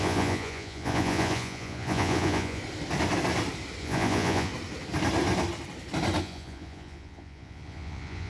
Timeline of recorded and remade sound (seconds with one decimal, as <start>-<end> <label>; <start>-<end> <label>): 0.0-2.6 remade; 2.6-3.8 recorded; 3.8-4.5 remade; 4.5-6.2 recorded; 6.2-8.3 remade